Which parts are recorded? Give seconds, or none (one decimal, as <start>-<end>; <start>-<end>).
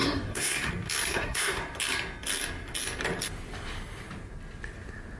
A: 0.7-1.1; 1.6-5.2